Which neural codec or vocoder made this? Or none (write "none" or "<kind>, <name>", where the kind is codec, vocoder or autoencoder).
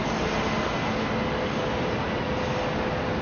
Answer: none